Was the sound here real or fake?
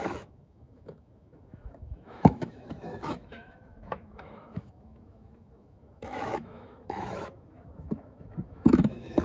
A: fake